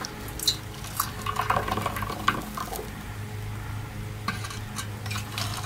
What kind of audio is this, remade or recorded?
recorded